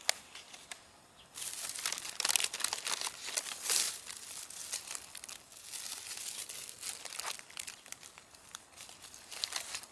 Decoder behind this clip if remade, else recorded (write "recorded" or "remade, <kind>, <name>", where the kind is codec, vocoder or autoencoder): recorded